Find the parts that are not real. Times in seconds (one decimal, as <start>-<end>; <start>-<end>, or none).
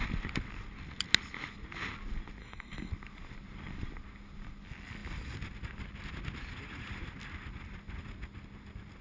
2.4-2.9